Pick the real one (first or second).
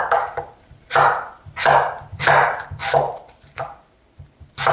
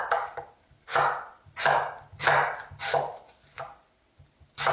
second